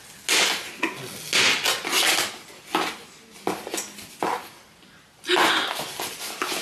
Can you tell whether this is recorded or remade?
recorded